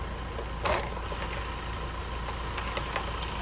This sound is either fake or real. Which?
real